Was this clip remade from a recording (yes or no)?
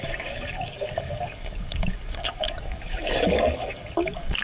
yes